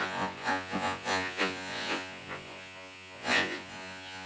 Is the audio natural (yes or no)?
no